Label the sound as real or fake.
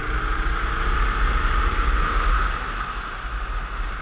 real